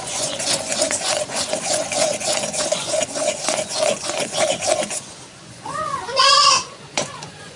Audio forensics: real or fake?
fake